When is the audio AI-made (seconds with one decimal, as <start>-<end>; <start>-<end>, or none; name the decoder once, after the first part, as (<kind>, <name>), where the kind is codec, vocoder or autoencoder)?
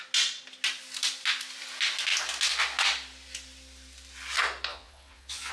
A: 4.7-5.5 (vocoder, Vocos)